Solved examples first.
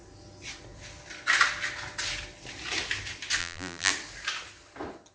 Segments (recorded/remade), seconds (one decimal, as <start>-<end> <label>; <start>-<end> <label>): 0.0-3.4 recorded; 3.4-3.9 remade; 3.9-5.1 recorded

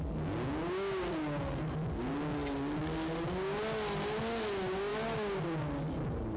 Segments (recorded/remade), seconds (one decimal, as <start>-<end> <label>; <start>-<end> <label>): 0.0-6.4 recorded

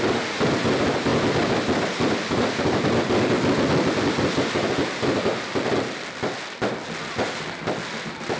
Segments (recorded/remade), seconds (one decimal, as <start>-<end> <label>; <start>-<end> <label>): 0.0-8.4 recorded